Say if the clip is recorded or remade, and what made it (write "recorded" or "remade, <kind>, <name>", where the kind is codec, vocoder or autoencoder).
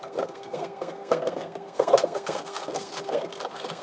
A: remade, codec, SNAC